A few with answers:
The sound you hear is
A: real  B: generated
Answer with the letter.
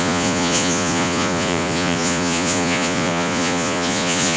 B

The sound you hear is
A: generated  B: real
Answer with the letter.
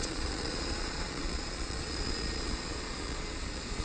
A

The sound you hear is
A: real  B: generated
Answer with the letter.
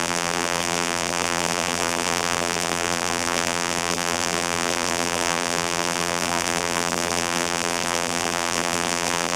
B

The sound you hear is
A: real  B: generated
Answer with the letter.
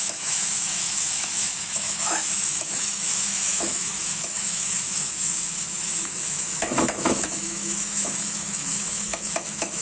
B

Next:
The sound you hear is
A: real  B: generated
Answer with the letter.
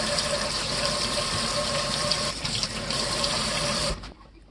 B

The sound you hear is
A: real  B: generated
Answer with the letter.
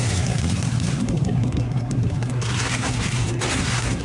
B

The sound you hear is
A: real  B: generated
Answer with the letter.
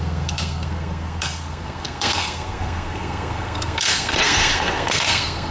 B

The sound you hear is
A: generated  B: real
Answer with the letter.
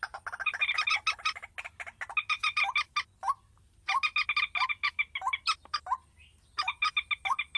B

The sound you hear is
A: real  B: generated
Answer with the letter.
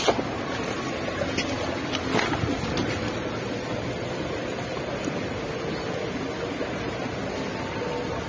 A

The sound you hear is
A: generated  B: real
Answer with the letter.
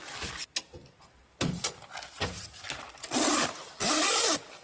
B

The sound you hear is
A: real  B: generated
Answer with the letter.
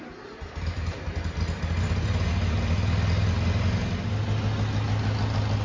A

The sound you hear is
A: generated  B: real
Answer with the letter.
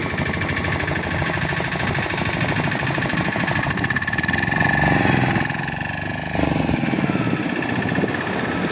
B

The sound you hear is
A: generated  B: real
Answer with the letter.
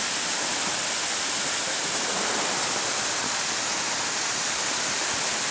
B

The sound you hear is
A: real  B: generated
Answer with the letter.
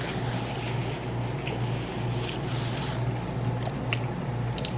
A